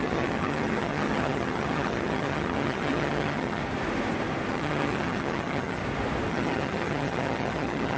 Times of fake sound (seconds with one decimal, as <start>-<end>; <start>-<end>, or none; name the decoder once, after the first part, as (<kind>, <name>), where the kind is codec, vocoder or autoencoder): 0.0-3.6 (vocoder, HiFi-GAN); 4.5-5.8; 6.3-8.0